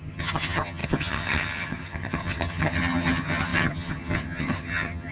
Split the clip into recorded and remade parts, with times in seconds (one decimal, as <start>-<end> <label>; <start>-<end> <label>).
0.0-5.1 remade